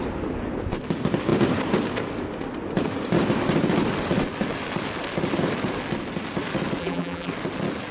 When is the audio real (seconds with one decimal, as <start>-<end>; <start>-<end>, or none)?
0.0-6.8; 7.3-7.9